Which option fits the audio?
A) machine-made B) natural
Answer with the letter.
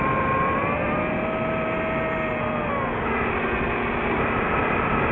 B